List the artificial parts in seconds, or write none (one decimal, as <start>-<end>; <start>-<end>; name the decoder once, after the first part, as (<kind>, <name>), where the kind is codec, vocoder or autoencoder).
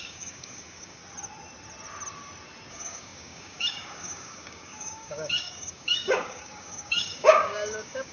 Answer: 0.0-1.0 (codec, DAC); 2.7-8.1